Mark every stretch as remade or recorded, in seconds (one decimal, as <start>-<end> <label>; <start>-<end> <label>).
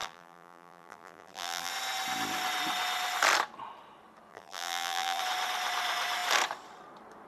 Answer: 0.0-1.7 remade; 1.7-4.3 recorded; 4.3-5.2 remade; 5.2-7.3 recorded